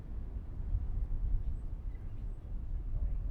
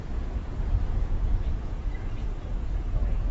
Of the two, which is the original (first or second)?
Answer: first